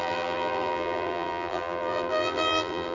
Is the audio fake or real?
fake